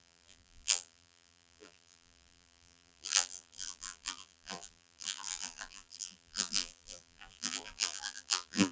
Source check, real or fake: fake